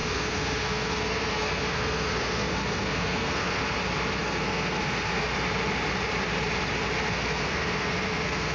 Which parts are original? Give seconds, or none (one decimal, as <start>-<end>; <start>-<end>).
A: 3.6-4.2; 5.3-7.1